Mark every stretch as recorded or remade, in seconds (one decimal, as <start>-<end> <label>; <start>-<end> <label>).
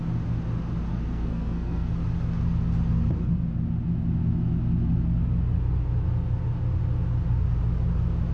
0.0-0.9 recorded; 0.9-1.9 remade; 1.9-8.3 recorded